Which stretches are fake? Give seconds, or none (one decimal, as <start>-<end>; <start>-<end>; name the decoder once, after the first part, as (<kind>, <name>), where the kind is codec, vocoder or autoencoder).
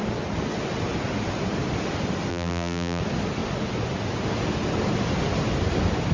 2.3-3.0 (vocoder, BigVGAN v2)